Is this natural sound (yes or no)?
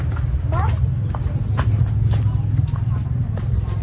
yes